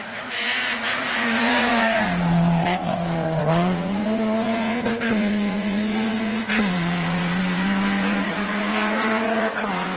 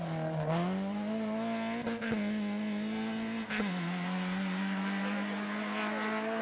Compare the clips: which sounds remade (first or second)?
first